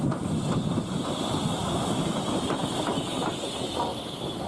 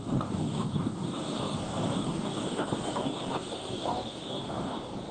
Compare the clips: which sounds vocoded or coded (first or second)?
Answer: second